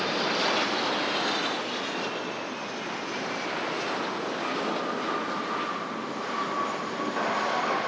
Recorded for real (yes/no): yes